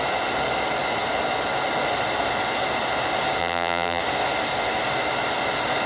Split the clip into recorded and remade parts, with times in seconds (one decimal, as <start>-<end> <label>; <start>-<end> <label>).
0.0-3.4 recorded; 3.4-4.0 remade; 4.0-5.9 recorded

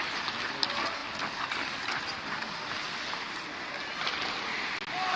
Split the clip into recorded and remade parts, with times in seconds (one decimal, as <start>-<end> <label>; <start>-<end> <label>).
0.0-5.2 recorded

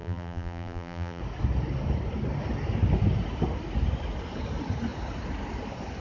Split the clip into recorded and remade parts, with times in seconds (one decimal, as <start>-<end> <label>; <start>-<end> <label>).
0.0-1.2 remade; 1.2-6.0 recorded

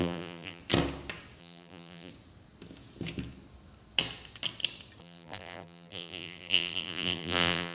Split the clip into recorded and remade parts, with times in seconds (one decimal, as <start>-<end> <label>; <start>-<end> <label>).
0.0-0.6 remade; 0.6-1.4 recorded; 1.4-2.1 remade; 2.1-5.0 recorded; 5.0-7.7 remade

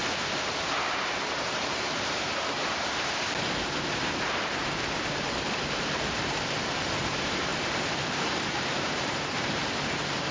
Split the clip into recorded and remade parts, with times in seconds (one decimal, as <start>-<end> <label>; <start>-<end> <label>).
0.0-0.7 recorded; 0.7-3.2 remade; 3.2-3.9 recorded; 3.9-10.3 remade

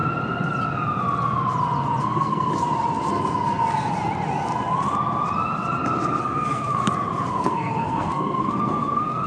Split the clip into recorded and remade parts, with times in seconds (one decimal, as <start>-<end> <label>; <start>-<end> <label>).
0.0-2.0 recorded; 2.0-2.5 remade; 2.5-6.2 recorded; 6.2-6.8 remade; 6.8-7.3 recorded; 7.3-9.3 remade